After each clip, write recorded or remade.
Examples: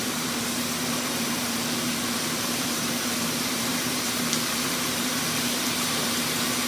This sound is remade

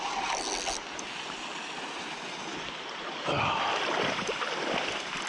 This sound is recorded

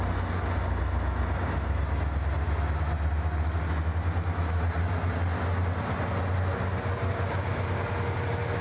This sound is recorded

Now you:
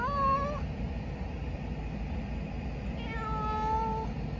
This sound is recorded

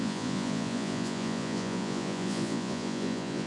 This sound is remade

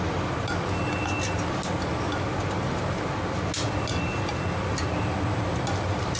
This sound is recorded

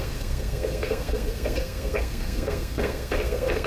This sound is remade